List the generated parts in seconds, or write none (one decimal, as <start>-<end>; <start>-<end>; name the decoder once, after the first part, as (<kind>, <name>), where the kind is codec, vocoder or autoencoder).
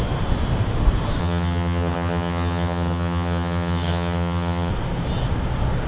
1.2-4.7 (vocoder, HiFi-GAN)